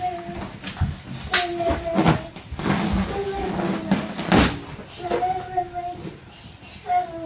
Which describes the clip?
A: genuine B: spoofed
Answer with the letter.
A